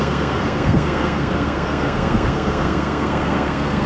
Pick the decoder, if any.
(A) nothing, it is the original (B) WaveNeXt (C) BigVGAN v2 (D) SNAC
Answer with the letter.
D